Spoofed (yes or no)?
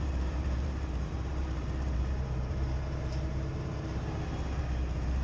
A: yes